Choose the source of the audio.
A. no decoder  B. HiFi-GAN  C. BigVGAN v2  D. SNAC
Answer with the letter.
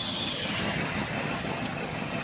B